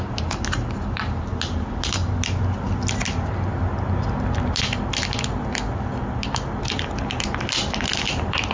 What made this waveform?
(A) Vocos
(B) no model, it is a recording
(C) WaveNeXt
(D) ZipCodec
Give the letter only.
B